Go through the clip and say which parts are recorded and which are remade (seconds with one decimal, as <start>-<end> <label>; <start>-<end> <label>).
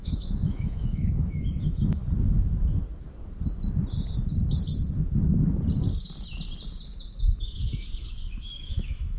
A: 0.0-2.0 remade; 2.0-7.2 recorded; 7.2-9.2 remade